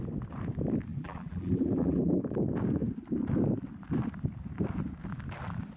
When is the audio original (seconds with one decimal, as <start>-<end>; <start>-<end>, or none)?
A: 0.0-0.9; 2.2-5.8